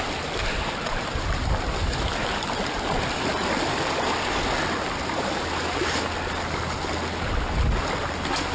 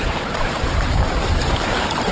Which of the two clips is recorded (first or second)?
first